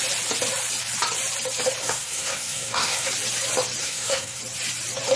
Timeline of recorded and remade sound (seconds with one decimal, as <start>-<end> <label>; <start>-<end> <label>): 0.0-1.8 recorded; 1.8-3.1 remade; 3.1-3.8 recorded; 3.8-4.4 remade; 4.4-5.2 recorded